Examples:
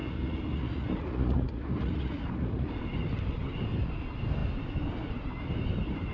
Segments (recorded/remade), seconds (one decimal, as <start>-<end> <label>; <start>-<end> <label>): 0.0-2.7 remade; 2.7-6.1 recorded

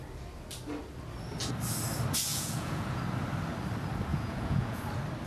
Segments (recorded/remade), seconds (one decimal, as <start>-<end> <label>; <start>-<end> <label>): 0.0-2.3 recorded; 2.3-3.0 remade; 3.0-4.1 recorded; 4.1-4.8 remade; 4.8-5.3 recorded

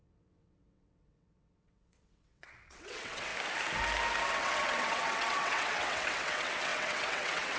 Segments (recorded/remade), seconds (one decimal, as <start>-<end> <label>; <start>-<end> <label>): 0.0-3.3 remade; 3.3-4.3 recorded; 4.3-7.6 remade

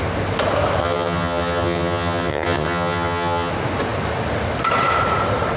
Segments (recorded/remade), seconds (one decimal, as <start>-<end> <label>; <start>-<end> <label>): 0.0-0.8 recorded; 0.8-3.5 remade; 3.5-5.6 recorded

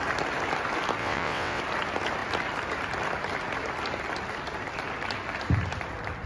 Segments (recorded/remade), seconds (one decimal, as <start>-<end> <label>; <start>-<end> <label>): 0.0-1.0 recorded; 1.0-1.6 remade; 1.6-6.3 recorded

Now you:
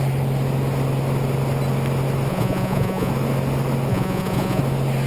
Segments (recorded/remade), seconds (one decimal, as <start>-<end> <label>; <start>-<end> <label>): 0.0-2.3 recorded; 2.3-3.1 remade; 3.1-3.9 recorded; 3.9-4.6 remade; 4.6-5.1 recorded